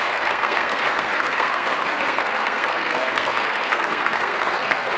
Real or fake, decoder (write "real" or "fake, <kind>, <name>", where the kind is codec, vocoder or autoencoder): fake, codec, SNAC